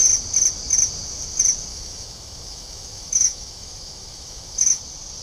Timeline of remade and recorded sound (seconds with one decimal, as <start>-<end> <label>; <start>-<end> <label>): 0.0-1.7 recorded; 1.7-4.8 remade; 4.8-5.2 recorded